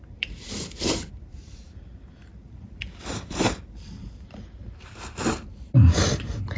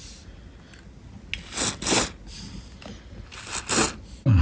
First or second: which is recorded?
second